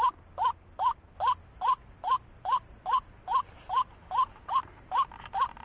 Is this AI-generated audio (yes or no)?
no